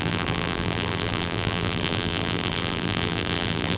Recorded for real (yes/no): no